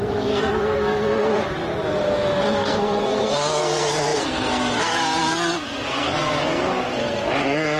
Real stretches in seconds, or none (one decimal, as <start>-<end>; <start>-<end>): 1.3-2.5